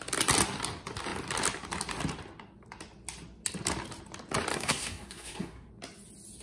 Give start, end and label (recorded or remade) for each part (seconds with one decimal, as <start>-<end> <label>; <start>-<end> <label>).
0.0-4.5 recorded; 4.5-5.7 remade; 5.7-6.4 recorded